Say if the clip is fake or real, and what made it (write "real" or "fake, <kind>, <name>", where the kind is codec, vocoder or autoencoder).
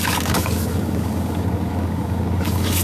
fake, codec, DAC